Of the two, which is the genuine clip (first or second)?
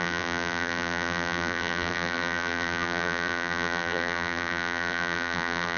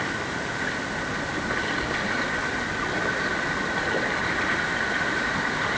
second